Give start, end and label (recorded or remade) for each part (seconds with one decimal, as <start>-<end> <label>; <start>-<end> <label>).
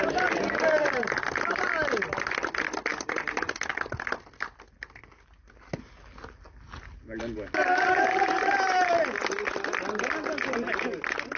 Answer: 0.0-11.4 recorded